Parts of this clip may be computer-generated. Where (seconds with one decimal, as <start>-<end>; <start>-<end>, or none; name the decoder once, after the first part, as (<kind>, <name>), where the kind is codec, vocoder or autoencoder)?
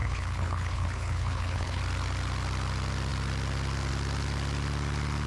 0.0-1.8 (codec, HILCodec)